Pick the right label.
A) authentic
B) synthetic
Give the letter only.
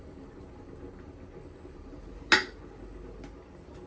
A